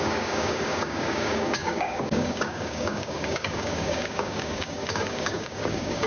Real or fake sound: fake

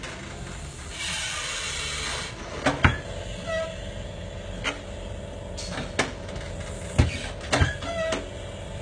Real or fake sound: real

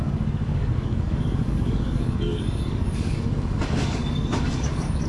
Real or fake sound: fake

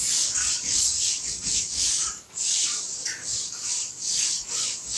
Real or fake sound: fake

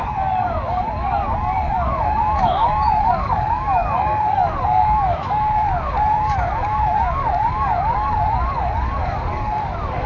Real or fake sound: fake